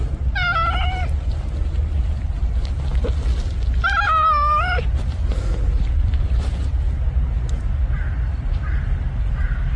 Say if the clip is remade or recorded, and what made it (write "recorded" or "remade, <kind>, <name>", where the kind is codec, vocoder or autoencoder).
recorded